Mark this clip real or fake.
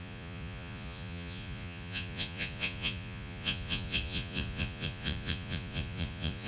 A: fake